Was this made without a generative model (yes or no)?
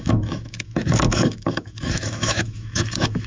no